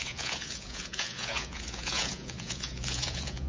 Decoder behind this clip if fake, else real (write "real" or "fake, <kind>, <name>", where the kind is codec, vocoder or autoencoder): fake, vocoder, Vocos